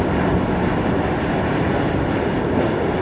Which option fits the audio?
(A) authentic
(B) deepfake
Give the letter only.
A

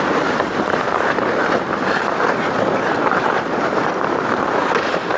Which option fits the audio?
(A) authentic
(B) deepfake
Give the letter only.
B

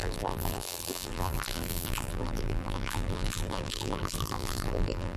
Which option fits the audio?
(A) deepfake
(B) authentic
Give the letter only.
A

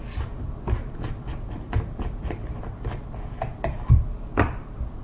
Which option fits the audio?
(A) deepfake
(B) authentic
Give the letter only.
B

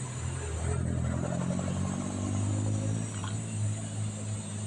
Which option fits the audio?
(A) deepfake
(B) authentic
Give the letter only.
B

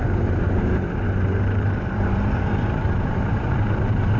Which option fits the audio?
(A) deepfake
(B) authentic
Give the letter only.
A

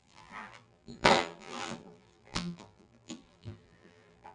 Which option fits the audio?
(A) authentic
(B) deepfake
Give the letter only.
B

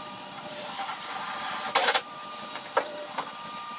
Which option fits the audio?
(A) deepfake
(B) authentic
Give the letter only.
A